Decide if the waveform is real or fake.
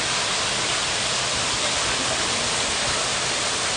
real